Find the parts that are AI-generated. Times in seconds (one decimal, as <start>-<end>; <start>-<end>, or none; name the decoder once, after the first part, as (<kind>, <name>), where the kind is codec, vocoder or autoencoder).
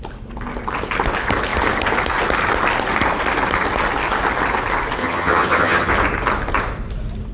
5.0-5.9 (vocoder, HiFi-GAN)